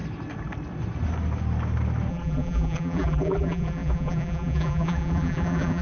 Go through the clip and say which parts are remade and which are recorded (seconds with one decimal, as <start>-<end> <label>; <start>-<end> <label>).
0.0-2.1 recorded; 2.1-5.8 remade